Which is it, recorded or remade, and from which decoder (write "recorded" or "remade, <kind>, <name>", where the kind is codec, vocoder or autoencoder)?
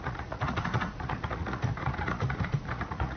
remade, vocoder, Vocos